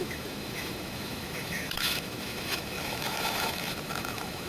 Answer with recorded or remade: remade